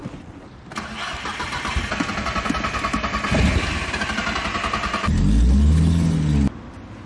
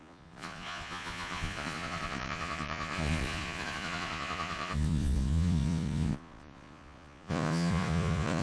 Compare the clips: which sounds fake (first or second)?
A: second